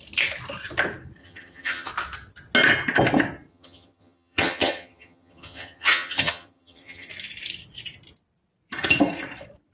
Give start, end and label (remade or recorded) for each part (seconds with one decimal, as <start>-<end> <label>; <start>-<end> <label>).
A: 0.0-1.2 recorded; 1.2-1.9 remade; 1.9-3.5 recorded; 3.5-7.1 remade; 7.1-9.7 recorded